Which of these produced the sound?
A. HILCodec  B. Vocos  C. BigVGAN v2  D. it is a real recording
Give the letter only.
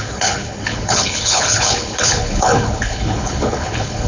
A